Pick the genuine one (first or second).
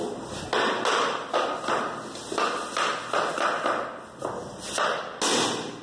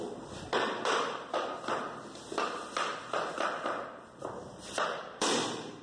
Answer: first